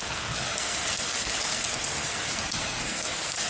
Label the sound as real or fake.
fake